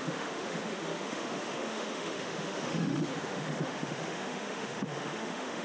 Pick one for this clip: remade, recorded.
remade